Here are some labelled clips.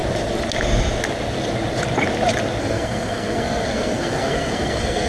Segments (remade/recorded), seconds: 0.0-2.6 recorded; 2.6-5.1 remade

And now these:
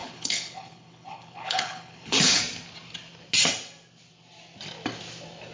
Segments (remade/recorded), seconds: 0.0-2.4 remade; 2.4-5.5 recorded

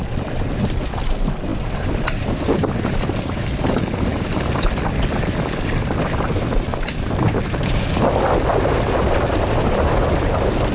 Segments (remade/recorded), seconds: 0.0-10.7 recorded

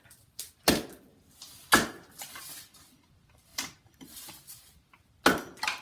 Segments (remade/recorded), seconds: 0.0-5.8 recorded